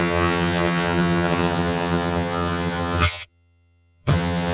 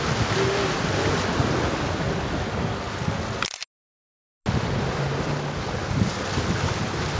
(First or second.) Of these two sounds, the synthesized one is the first